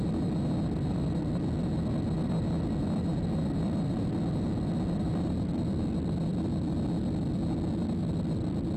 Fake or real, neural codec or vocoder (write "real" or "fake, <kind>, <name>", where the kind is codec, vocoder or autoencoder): real